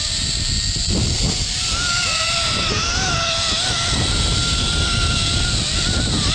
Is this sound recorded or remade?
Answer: recorded